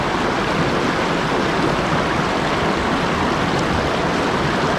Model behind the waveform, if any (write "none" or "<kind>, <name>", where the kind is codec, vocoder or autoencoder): none